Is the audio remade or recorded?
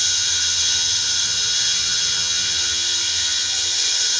remade